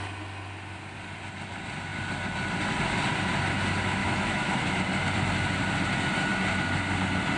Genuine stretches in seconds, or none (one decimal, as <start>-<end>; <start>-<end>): 0.0-4.0; 4.8-7.4